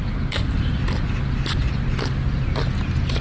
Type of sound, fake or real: real